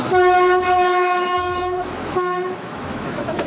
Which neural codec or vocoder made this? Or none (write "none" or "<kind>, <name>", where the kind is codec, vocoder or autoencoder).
autoencoder, DAC-VAE